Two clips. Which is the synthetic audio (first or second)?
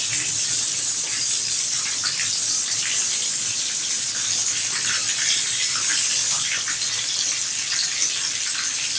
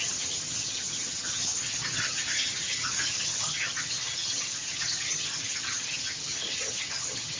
second